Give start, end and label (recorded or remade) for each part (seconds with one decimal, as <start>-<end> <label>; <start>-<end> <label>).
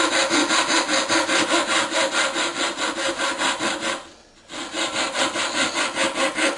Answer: 0.0-6.6 recorded